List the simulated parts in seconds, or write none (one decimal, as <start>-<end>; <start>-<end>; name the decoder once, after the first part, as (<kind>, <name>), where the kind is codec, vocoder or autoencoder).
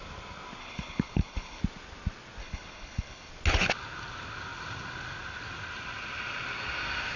0.6-1.6 (codec, HILCodec); 2.4-3.3